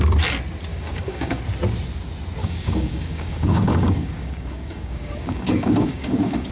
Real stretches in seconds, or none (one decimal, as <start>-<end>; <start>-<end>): 0.0-0.7; 1.4-2.4